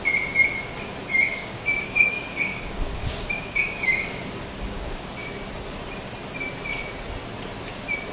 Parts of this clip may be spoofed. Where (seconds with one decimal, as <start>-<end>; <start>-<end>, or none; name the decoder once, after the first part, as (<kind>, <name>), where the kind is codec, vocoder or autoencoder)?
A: 1.0-5.1 (codec, DAC)